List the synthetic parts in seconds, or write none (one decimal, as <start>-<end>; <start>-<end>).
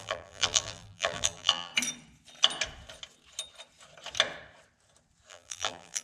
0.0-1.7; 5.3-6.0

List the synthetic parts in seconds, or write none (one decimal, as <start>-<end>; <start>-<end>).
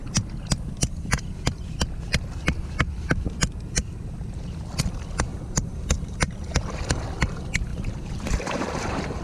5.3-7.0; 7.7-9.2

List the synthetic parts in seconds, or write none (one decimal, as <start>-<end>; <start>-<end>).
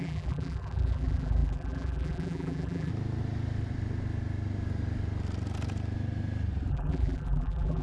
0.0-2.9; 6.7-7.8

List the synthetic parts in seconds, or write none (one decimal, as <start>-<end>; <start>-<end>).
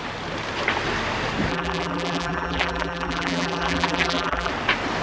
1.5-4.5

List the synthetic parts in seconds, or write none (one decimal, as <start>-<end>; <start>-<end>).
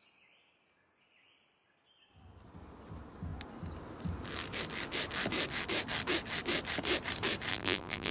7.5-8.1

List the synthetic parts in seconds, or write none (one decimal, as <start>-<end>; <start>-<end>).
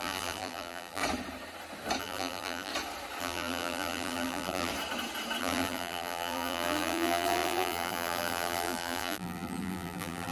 0.0-1.0; 2.0-2.7; 3.2-4.7; 5.4-10.3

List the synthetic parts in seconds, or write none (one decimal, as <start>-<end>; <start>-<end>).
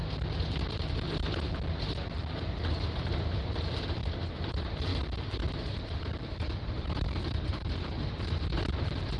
3.2-4.9; 6.0-9.2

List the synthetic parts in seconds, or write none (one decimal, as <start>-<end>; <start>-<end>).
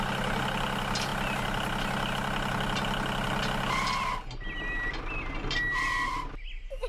none